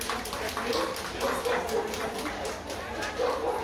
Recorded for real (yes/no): yes